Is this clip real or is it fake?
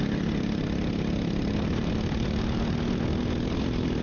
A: real